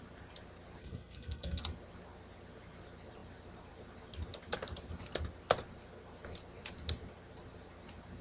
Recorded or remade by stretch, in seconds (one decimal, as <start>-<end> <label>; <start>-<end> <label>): 0.0-0.8 recorded; 0.8-1.6 remade; 1.6-8.2 recorded